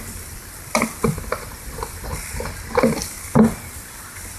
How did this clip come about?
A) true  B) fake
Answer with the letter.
A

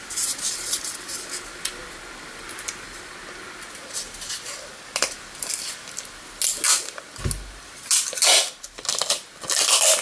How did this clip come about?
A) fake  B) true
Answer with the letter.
B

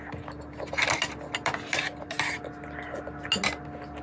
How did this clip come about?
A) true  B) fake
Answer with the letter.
A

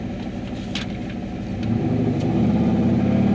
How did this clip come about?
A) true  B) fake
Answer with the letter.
A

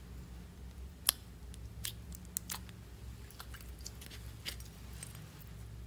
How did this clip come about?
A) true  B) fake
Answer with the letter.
A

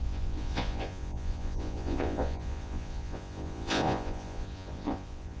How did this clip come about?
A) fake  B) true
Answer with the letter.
A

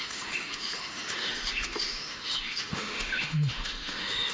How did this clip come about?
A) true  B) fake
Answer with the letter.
B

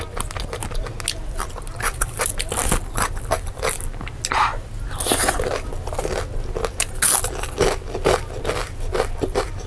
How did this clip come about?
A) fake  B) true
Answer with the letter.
B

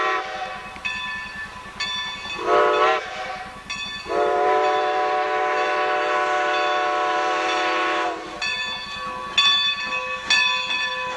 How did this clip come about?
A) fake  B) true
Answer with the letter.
B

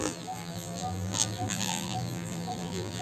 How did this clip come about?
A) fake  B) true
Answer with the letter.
A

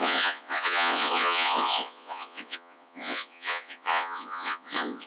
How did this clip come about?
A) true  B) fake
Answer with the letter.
B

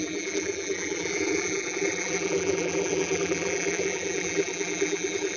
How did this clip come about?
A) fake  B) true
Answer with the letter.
A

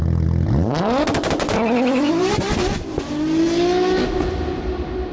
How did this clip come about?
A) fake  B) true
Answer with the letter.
B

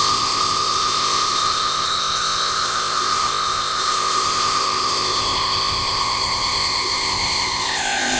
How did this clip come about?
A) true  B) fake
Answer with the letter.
B